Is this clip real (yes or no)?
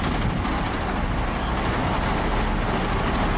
yes